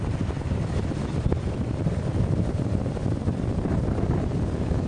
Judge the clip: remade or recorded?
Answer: recorded